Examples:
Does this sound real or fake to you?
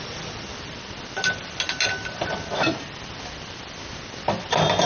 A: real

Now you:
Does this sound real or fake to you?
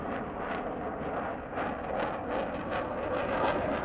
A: real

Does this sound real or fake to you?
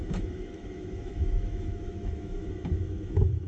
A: fake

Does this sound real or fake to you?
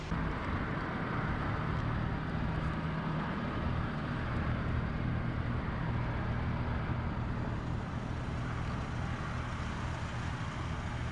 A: real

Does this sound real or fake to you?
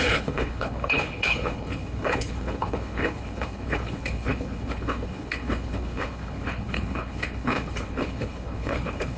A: fake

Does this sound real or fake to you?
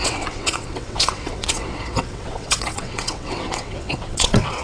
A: fake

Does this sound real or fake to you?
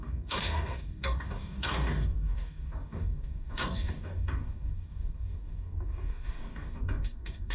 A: fake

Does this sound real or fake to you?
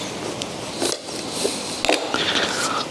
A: real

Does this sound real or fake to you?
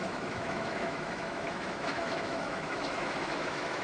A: fake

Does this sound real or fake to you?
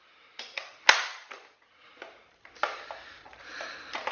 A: real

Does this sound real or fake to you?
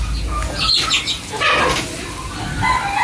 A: real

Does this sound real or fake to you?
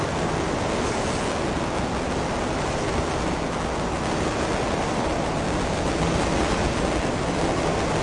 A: real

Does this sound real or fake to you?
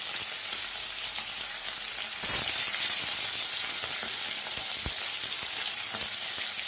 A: fake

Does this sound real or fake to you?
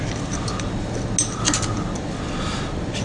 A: real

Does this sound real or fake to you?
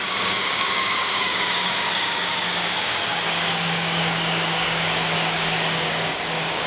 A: fake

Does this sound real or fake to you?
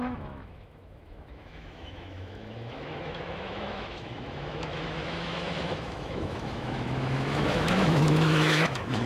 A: fake